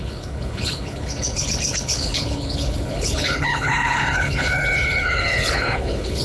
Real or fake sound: fake